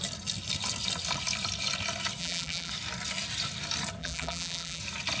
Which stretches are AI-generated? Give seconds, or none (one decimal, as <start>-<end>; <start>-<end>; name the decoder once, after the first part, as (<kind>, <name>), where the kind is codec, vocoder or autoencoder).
2.2-2.7 (vocoder, BigVGAN v2); 4.0-4.8